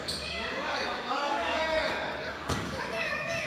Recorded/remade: remade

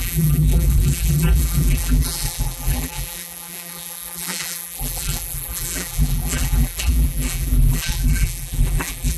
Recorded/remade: remade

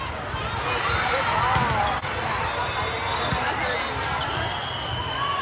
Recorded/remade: recorded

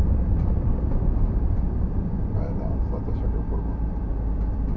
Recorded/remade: remade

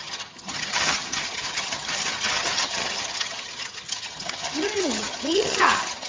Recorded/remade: remade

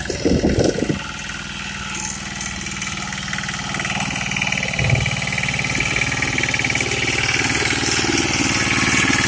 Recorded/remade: recorded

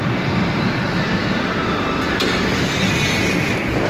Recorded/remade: recorded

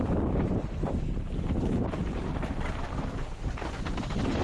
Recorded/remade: recorded